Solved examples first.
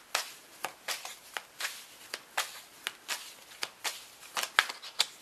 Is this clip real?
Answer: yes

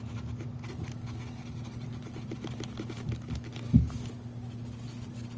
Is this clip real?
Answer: yes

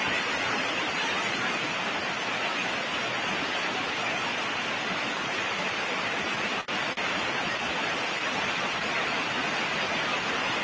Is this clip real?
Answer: yes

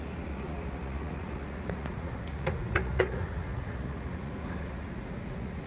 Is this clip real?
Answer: no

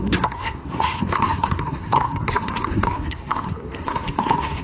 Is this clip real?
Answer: no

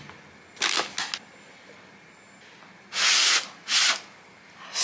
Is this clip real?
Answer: yes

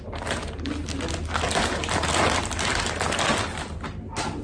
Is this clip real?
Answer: yes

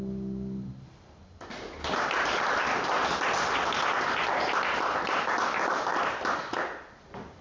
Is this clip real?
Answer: yes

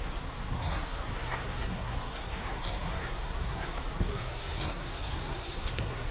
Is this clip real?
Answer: no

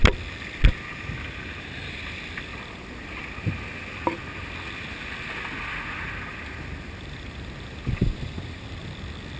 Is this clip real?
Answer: yes